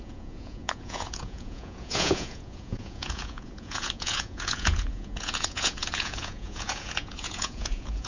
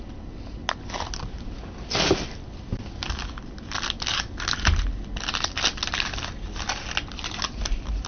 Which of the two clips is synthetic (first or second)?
first